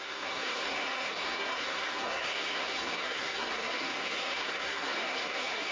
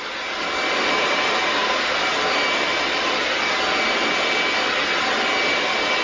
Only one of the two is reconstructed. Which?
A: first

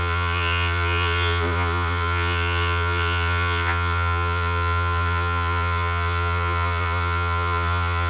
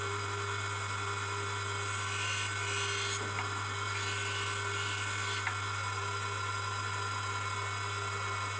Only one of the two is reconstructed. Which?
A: first